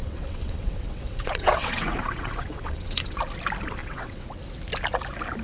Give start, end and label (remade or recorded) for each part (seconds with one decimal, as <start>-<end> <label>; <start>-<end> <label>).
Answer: 0.0-3.2 remade; 3.2-3.8 recorded; 3.8-4.4 remade; 4.4-5.4 recorded